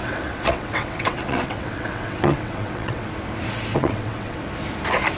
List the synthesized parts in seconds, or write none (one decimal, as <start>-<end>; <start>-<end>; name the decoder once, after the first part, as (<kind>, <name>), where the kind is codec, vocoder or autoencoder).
0.0-3.1 (vocoder, WaveNeXt); 3.7-4.4